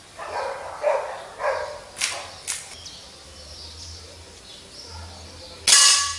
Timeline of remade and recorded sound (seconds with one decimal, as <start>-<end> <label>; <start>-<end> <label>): 0.0-6.2 recorded